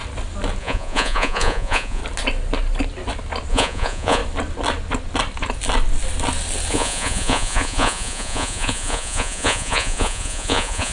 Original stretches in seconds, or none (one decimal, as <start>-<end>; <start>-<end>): 0.0-0.6; 2.0-3.5; 4.2-6.7